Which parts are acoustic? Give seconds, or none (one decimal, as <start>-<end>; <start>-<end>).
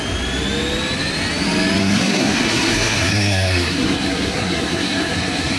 0.0-1.8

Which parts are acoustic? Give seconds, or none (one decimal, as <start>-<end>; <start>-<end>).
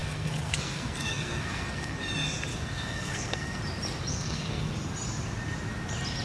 2.0-2.5; 3.6-4.1; 4.7-6.2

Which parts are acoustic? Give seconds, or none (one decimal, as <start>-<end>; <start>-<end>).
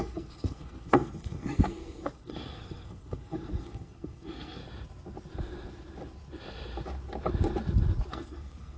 4.6-8.1